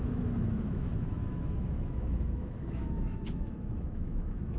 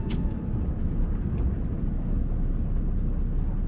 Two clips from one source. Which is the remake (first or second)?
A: first